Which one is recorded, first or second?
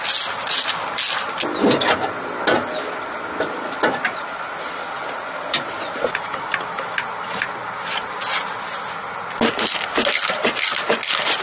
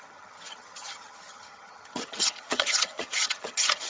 first